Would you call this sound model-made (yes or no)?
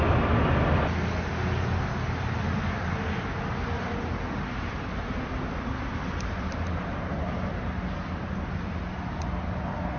no